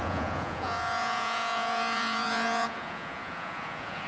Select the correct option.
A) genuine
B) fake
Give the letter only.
B